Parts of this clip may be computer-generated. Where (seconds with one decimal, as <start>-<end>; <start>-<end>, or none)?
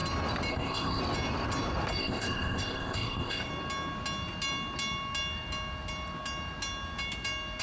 0.5-1.0; 2.0-3.5